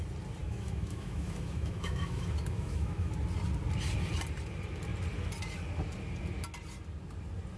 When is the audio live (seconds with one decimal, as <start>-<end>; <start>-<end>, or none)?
0.0-0.4; 3.1-7.6